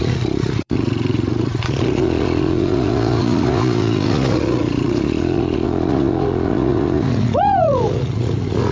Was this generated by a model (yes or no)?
yes